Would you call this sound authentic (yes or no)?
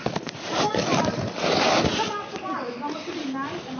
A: yes